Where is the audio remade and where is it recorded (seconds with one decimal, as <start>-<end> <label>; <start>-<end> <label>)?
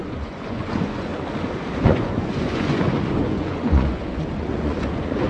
0.0-1.1 remade; 1.1-1.8 recorded; 1.8-5.3 remade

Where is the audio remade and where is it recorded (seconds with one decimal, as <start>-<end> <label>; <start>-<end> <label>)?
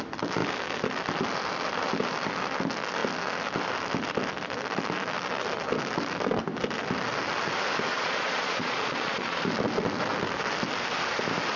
0.0-7.9 recorded; 7.9-9.4 remade; 9.4-11.6 recorded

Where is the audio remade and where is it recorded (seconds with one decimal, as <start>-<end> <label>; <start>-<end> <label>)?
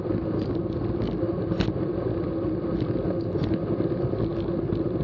0.0-5.0 recorded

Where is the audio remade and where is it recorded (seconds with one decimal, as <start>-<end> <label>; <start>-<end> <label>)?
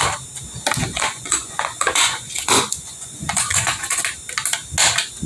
0.0-0.8 recorded; 0.8-4.0 remade; 4.0-5.3 recorded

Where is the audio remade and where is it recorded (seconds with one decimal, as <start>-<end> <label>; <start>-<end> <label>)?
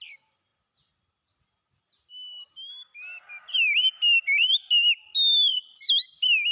0.0-6.5 recorded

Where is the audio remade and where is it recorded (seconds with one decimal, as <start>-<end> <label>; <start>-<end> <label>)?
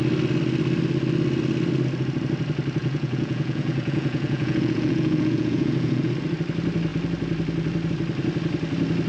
0.0-2.8 recorded; 2.8-6.1 remade; 6.1-9.1 recorded